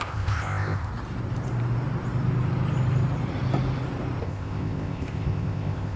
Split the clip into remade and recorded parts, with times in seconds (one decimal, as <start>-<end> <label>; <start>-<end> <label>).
0.0-0.9 remade; 0.9-4.2 recorded; 4.2-6.0 remade